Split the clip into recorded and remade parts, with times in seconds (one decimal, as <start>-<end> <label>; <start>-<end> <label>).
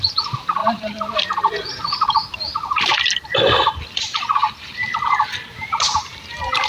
0.0-2.9 remade; 2.9-5.5 recorded; 5.5-6.7 remade